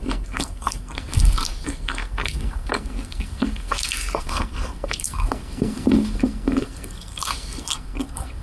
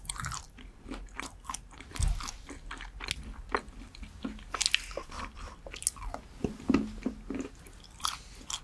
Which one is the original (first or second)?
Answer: second